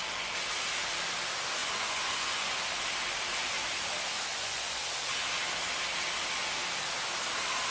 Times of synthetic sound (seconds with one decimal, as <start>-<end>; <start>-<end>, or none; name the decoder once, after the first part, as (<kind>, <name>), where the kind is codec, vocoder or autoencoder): 1.6-2.6 (vocoder, Vocos); 4.3-4.8